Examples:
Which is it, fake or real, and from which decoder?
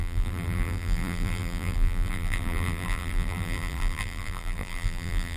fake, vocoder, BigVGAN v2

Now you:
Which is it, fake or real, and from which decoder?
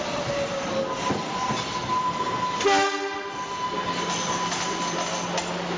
real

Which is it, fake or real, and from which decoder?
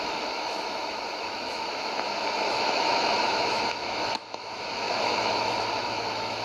fake, autoencoder, DAC-VAE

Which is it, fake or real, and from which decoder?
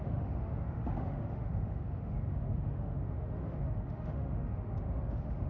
fake, autoencoder, DAC-VAE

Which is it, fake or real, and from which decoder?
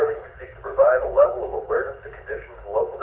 fake, codec, HILCodec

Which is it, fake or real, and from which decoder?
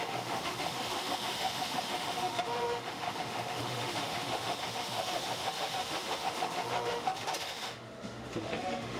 fake, autoencoder, DAC-VAE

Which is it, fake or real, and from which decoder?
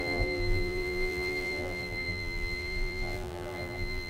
fake, vocoder, BigVGAN v2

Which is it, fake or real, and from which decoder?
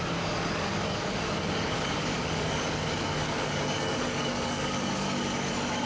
fake, codec, DAC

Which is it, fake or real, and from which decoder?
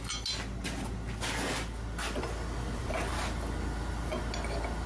real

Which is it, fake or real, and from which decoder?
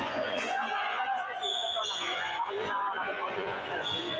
fake, vocoder, Vocos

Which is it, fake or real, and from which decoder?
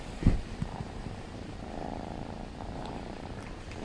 fake, vocoder, BigVGAN v2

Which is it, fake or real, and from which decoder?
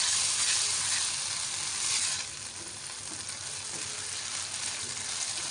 real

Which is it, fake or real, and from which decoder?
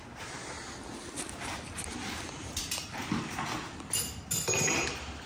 real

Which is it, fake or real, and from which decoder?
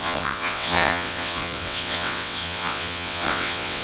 fake, vocoder, WaveNeXt